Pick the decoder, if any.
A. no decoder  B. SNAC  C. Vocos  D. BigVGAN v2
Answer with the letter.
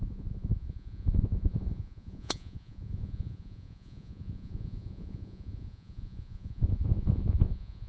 C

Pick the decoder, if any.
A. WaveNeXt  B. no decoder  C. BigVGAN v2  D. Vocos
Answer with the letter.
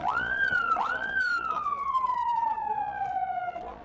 D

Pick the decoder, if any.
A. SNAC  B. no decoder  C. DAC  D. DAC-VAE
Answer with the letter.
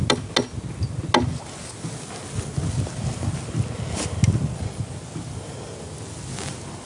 B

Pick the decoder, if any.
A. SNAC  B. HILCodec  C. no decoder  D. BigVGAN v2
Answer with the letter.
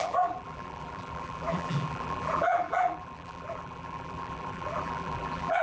D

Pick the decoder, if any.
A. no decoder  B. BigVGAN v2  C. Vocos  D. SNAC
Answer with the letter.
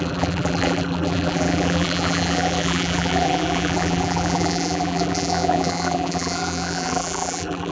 B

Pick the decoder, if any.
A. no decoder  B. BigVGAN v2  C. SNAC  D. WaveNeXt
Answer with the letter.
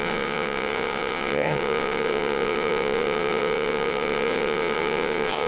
D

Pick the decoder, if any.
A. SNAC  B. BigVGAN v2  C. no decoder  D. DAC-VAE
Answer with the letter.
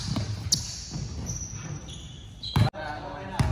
C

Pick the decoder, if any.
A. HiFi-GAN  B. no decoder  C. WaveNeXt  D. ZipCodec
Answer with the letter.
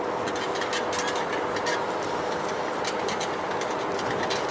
B